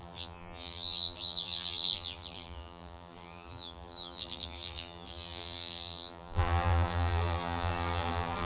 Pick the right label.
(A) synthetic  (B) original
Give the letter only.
A